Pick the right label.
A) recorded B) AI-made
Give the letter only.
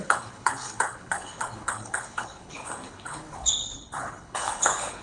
B